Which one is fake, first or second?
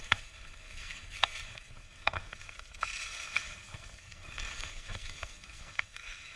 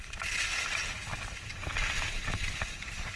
first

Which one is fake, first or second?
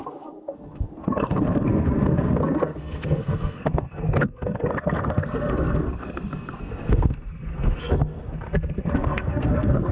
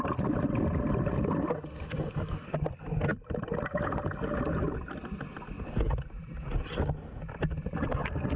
first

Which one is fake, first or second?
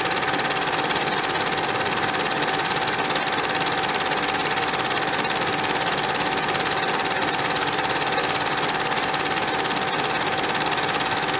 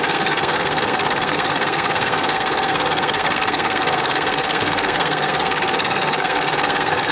second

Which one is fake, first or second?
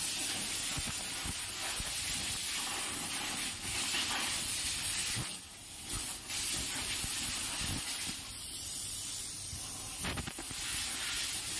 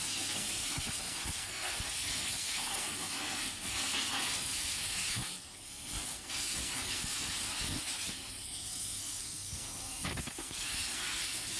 second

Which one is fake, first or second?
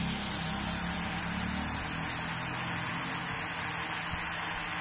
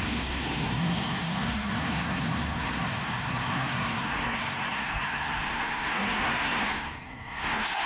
second